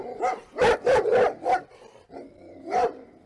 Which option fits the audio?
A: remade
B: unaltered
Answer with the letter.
B